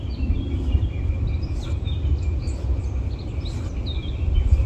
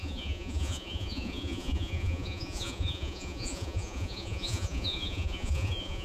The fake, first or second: second